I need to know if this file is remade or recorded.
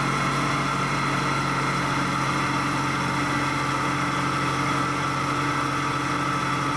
recorded